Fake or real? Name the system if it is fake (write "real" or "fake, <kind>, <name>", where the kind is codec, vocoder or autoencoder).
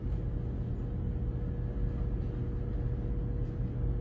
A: real